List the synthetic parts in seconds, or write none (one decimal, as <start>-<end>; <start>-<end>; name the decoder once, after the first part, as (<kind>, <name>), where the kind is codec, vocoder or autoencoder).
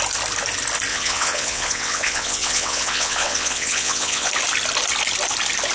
0.9-4.3 (vocoder, WaveNeXt)